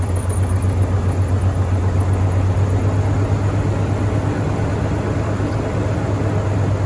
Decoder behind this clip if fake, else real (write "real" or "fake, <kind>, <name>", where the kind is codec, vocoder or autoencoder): real